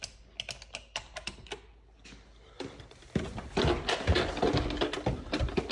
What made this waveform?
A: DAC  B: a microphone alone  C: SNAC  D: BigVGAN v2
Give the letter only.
B